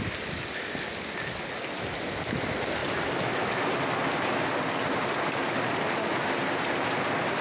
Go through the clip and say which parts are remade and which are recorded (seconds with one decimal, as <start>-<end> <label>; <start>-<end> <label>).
0.0-7.4 recorded